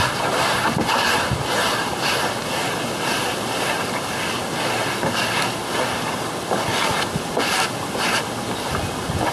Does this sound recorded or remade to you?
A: recorded